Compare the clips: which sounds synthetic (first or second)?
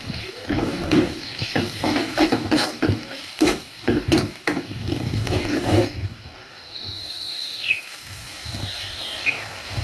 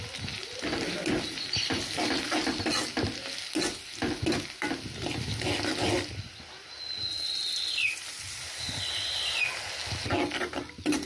first